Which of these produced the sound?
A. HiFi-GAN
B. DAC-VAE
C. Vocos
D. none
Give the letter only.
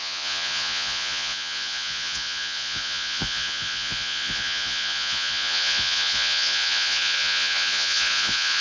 C